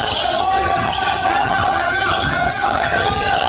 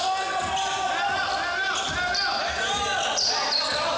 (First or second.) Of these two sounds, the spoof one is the first